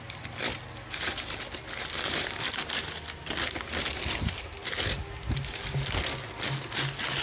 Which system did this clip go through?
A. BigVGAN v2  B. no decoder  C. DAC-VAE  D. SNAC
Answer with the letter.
B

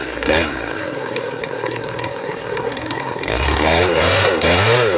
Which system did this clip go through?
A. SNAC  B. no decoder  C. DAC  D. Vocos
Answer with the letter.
A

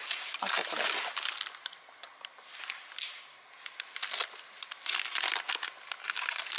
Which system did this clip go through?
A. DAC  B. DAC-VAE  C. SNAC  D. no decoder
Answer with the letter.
D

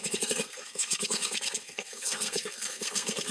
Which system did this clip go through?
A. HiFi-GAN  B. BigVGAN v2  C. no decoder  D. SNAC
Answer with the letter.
D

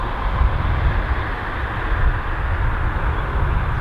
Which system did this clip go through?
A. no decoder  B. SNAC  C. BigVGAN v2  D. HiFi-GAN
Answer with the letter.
A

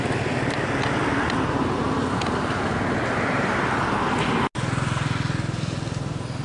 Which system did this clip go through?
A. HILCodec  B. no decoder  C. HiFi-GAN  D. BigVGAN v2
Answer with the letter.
B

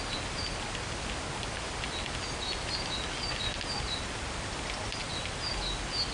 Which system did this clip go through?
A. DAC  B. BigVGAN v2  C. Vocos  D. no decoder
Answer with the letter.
D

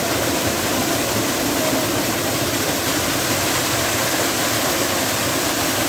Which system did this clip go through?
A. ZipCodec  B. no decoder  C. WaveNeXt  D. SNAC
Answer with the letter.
B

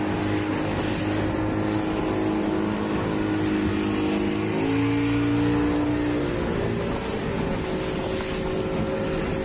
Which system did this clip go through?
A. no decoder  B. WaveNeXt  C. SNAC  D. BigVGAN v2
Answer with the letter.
A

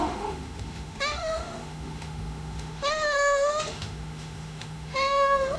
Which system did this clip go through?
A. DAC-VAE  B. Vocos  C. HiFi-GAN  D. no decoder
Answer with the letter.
A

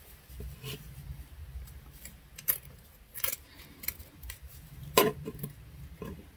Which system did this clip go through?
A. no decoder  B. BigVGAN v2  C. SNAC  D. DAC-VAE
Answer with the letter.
A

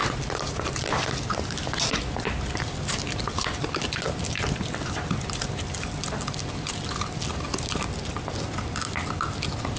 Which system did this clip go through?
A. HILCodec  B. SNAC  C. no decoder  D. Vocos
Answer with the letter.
C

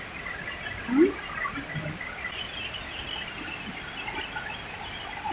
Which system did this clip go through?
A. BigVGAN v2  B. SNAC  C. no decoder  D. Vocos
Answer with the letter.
C